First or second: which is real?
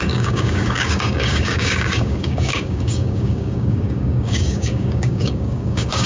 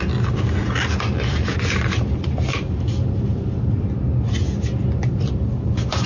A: second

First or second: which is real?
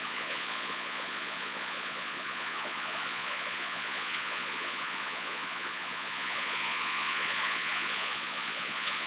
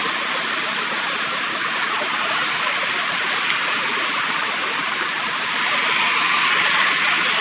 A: second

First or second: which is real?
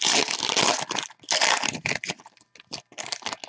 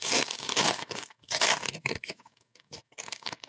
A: first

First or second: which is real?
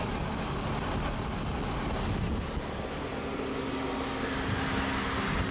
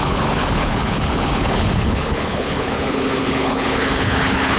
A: first